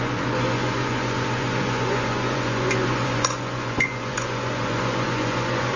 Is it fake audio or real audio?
fake